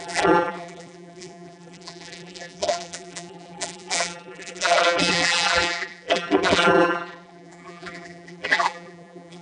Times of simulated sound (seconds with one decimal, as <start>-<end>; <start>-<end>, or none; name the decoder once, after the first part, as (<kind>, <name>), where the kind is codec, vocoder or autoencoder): 0.0-9.4 (vocoder, BigVGAN v2)